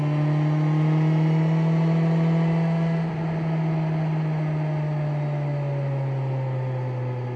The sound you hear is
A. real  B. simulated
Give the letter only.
A